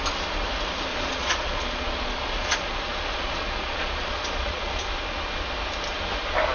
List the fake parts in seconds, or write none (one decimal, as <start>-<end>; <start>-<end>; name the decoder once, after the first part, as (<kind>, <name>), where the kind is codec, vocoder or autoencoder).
0.9-4.8 (vocoder, Vocos)